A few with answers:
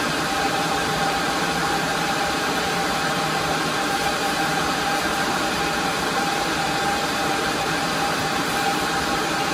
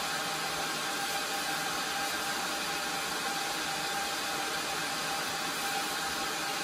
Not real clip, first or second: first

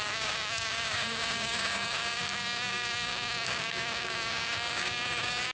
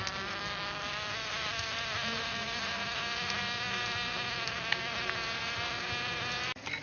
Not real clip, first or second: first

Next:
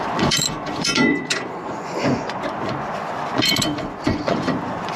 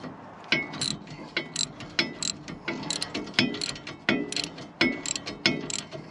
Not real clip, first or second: first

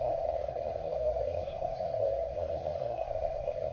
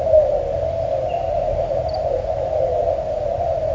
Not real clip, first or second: first